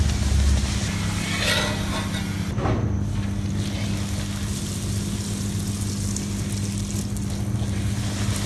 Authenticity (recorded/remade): recorded